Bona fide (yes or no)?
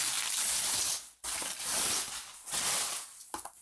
yes